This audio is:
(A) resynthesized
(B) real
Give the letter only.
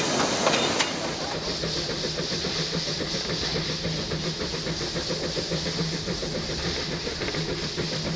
B